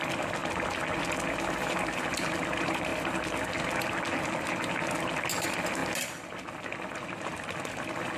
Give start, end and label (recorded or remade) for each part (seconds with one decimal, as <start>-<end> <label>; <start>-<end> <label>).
0.0-2.9 recorded; 2.9-3.6 remade; 3.6-8.2 recorded